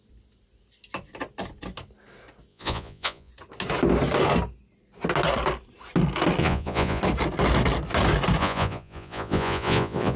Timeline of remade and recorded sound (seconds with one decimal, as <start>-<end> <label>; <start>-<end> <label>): 0.0-2.5 recorded; 2.5-3.3 remade; 3.3-6.4 recorded; 6.4-7.0 remade; 7.0-8.4 recorded; 8.4-10.2 remade